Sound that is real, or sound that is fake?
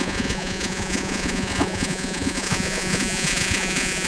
fake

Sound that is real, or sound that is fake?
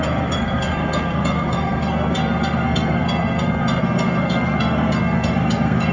fake